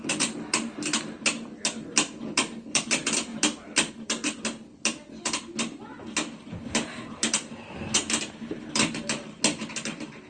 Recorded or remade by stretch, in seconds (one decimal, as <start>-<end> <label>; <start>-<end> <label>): 0.0-10.3 recorded